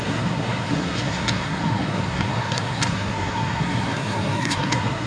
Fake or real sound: fake